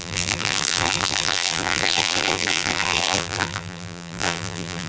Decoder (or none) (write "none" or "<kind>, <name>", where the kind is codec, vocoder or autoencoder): vocoder, BigVGAN v2